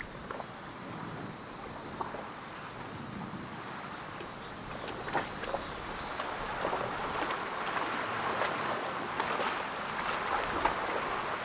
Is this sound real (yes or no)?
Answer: yes